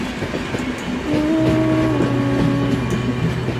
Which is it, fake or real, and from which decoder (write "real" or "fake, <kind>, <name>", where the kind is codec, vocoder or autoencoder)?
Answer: real